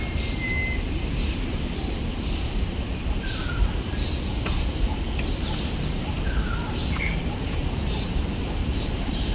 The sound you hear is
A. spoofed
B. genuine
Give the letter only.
A